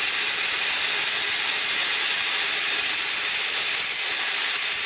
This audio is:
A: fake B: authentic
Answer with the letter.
B